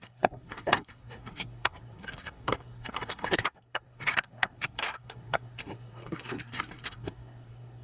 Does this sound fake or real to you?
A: fake